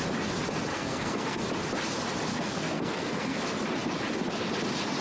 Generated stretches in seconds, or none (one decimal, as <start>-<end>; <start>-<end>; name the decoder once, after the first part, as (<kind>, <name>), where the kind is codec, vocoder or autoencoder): 0.7-1.4 (codec, SNAC); 2.3-3.4